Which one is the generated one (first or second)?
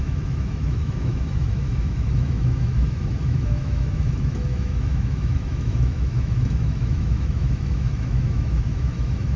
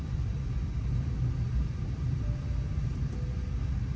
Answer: first